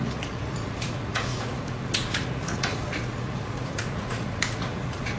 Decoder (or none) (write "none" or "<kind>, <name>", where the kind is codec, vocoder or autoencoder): vocoder, Vocos